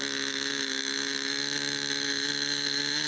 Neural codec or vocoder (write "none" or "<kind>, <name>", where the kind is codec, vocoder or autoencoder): autoencoder, DAC-VAE